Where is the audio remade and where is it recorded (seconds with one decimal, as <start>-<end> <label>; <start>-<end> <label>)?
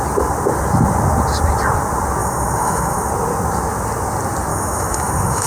0.0-2.2 recorded; 2.2-3.1 remade; 3.1-4.5 recorded; 4.5-5.5 remade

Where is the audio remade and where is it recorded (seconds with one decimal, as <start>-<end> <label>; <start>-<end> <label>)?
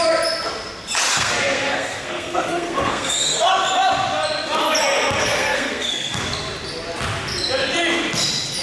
0.0-1.1 recorded; 1.1-3.5 remade; 3.5-5.2 recorded; 5.2-6.2 remade; 6.2-8.6 recorded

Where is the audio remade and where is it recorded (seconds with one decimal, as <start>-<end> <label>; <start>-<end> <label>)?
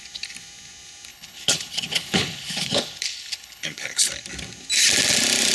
0.0-1.1 recorded; 1.1-4.1 remade; 4.1-5.5 recorded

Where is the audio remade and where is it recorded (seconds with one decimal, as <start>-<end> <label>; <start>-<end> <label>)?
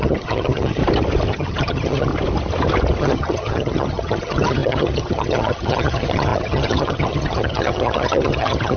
0.0-0.8 remade; 0.8-1.3 recorded; 1.3-2.1 remade; 2.1-3.0 recorded; 3.0-8.8 remade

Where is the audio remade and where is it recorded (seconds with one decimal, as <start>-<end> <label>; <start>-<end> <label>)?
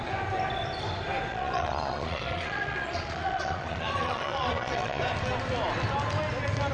0.0-1.3 recorded; 1.3-5.0 remade; 5.0-6.7 recorded